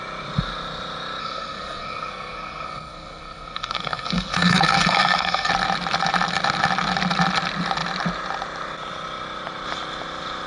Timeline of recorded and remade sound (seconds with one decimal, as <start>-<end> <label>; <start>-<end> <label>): 0.0-1.2 recorded; 1.2-5.5 remade; 5.5-10.5 recorded